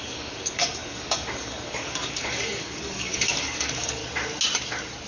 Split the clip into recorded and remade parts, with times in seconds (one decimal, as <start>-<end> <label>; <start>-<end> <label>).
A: 0.0-4.0 remade; 4.0-5.1 recorded